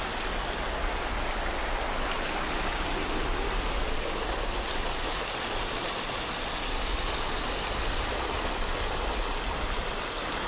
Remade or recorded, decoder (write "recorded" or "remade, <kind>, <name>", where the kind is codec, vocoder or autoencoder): recorded